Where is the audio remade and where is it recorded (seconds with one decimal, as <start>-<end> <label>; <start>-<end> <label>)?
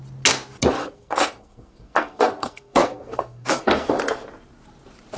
0.0-0.8 recorded; 0.8-3.9 remade; 3.9-5.2 recorded